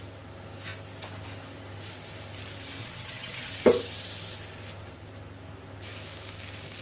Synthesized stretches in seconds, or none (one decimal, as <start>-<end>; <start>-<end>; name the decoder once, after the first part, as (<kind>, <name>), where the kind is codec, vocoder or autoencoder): 2.8-3.5 (vocoder, HiFi-GAN)